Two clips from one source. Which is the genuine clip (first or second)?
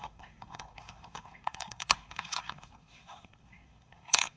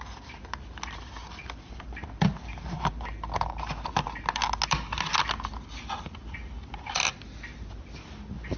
second